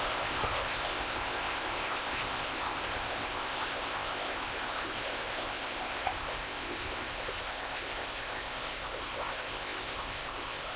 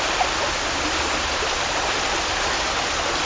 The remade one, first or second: first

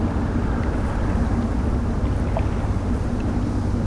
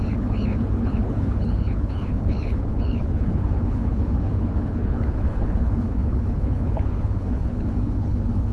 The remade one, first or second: second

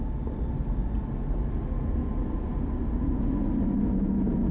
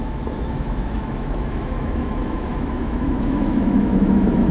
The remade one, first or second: second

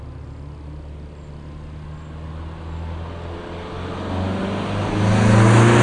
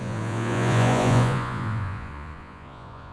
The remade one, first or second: second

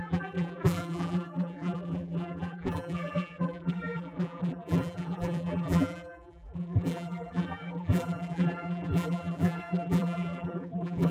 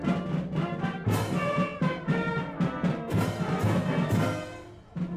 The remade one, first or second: first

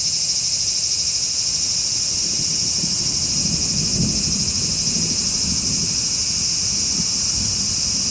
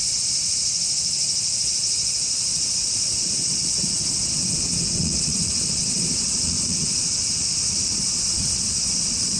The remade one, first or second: second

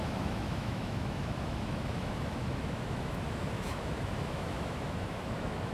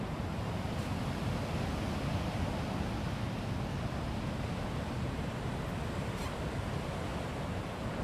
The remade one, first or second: first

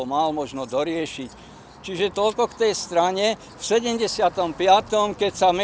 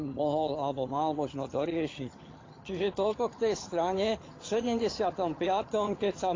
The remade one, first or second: second